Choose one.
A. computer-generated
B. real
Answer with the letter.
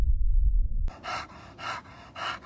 B